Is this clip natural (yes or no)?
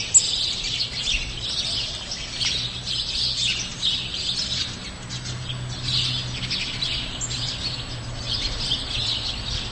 yes